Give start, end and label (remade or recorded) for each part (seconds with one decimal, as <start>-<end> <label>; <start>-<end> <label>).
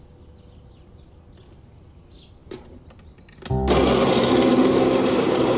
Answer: 0.0-4.6 recorded; 4.6-5.6 remade